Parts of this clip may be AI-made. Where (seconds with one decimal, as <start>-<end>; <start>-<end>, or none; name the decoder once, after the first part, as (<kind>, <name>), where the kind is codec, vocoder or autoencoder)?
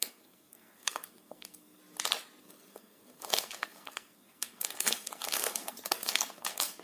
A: 0.0-1.8 (codec, SNAC); 2.4-6.8